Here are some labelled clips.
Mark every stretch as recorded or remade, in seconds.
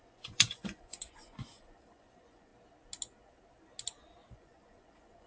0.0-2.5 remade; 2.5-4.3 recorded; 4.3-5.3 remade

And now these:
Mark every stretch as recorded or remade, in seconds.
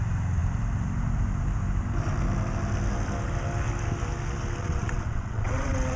0.0-4.6 recorded; 4.6-6.0 remade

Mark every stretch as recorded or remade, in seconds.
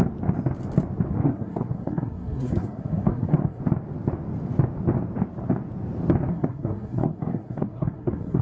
0.0-1.1 recorded; 1.1-3.6 remade; 3.6-6.3 recorded; 6.3-8.4 remade